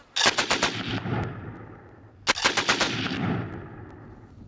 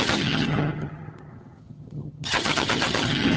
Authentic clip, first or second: first